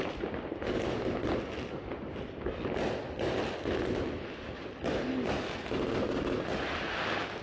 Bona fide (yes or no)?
yes